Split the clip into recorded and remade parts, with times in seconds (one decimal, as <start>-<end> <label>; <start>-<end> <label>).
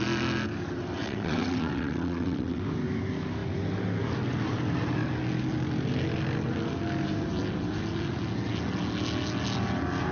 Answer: 0.0-1.0 recorded; 1.0-2.6 remade; 2.6-10.1 recorded